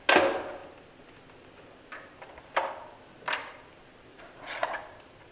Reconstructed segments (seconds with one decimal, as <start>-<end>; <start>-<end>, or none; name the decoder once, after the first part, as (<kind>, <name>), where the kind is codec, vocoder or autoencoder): 4.1-4.8 (vocoder, Vocos)